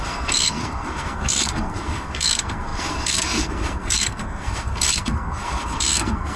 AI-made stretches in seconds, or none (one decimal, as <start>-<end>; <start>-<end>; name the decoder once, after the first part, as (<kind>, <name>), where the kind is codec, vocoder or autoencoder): 0.0-6.4 (codec, SNAC)